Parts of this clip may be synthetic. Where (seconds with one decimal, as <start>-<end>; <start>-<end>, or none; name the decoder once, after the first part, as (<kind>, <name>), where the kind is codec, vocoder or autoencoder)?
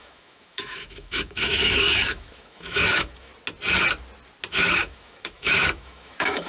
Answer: 0.0-3.3 (autoencoder, DAC-VAE); 4.5-6.5